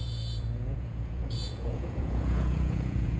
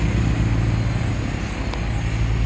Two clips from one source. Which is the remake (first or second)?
first